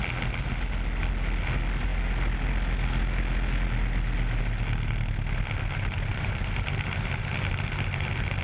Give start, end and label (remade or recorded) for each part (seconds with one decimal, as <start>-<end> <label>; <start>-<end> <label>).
0.0-6.1 recorded; 6.1-8.4 remade